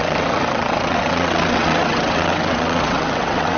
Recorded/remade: remade